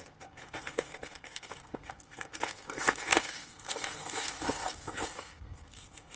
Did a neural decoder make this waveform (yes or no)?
yes